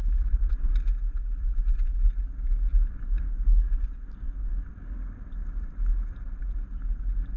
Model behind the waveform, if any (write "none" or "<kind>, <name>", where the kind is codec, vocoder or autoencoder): none